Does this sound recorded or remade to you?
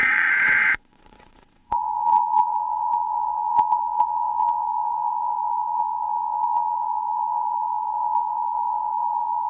remade